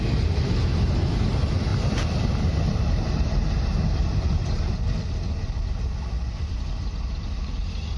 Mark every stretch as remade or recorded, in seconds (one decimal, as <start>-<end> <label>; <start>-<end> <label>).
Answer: 0.0-8.0 recorded